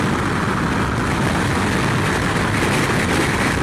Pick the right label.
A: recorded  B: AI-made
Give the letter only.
A